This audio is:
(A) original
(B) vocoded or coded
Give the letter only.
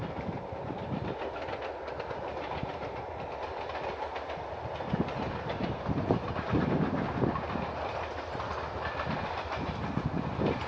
A